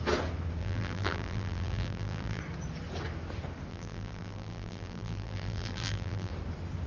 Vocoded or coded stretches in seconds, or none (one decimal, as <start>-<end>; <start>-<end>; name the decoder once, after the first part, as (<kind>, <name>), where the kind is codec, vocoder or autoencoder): 0.6-2.4 (vocoder, BigVGAN v2); 3.7-6.3